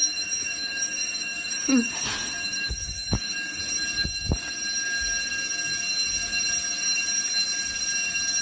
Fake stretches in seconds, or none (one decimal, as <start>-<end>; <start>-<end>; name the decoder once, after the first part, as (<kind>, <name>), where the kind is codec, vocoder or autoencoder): 0.0-3.6 (autoencoder, DAC-VAE)